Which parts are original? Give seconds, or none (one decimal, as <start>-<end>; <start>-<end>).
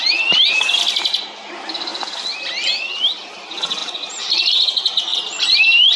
0.0-5.1